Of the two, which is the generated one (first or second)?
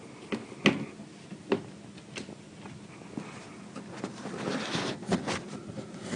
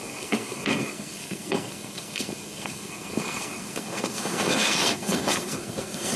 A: second